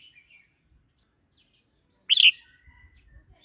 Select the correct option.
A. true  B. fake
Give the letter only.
A